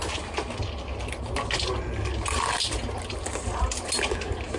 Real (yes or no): yes